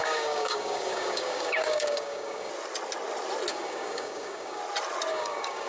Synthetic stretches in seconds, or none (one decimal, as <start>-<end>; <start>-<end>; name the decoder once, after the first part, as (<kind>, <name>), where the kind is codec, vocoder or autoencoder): 0.0-2.5 (codec, DAC); 3.5-4.6; 5.1-5.7